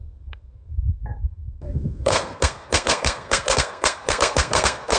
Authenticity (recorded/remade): remade